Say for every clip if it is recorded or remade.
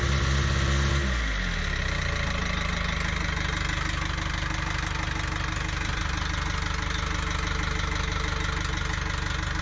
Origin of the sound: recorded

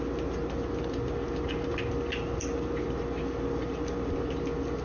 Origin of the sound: recorded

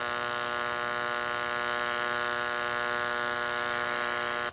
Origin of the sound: recorded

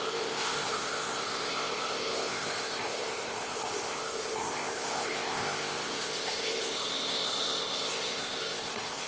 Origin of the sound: remade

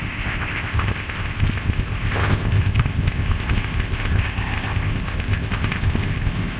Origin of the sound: remade